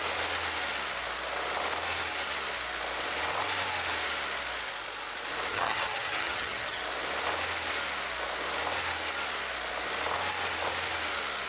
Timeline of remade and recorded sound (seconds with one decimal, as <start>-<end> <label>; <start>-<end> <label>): 0.0-5.5 recorded; 5.5-6.8 remade; 6.8-11.5 recorded